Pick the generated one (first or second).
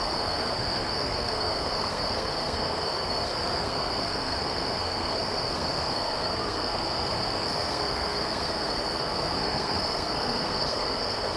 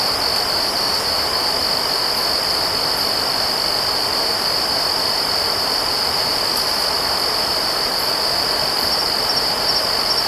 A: first